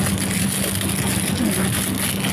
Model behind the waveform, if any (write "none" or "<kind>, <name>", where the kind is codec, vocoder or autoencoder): none